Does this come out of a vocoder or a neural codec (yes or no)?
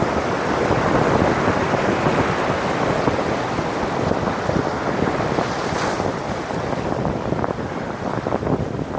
no